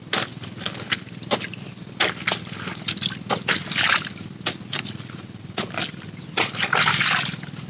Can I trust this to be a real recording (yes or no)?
yes